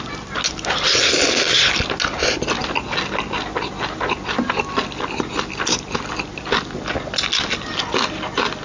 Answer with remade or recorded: recorded